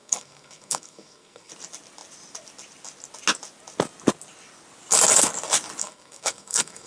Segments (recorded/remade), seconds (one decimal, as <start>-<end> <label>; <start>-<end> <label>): 0.0-1.5 remade; 1.5-5.8 recorded; 5.8-6.9 remade